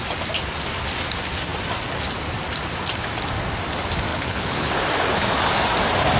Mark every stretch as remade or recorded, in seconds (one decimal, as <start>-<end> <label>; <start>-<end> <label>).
0.0-4.1 recorded; 4.1-4.7 remade; 4.7-6.2 recorded